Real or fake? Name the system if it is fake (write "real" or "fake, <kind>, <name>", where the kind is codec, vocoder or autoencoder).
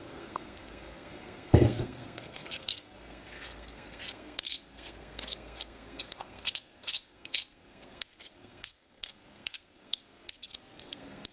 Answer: fake, codec, SNAC